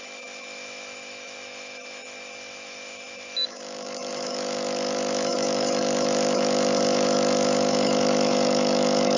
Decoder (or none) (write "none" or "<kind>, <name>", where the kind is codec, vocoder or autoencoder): autoencoder, DAC-VAE